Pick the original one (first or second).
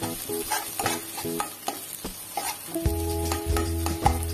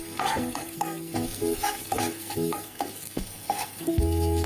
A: first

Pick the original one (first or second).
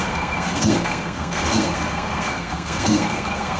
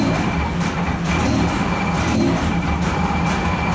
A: second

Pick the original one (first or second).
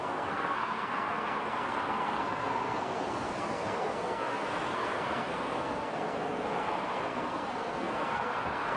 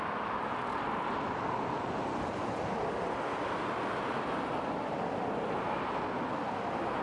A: second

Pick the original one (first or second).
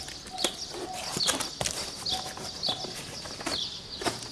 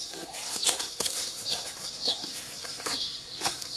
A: first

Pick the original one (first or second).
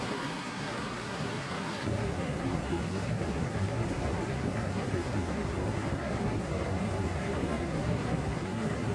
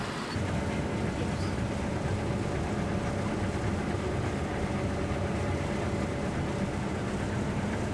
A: second